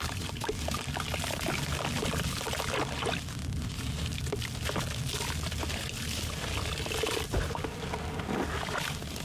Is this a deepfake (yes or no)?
no